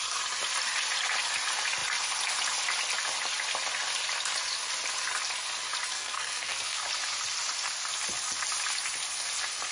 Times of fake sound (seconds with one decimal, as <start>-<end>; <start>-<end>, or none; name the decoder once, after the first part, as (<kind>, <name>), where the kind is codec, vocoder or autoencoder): 5.9-6.8 (codec, SNAC)

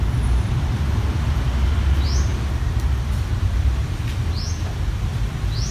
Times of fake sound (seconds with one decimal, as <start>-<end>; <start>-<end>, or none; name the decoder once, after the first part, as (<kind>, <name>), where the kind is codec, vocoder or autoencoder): 0.0-5.7 (vocoder, BigVGAN v2)